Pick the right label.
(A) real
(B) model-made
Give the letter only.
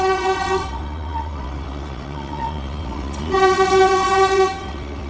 B